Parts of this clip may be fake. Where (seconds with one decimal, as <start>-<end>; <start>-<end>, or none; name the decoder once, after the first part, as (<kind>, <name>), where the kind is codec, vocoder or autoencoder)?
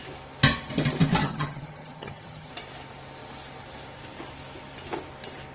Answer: 1.2-2.5 (vocoder, HiFi-GAN)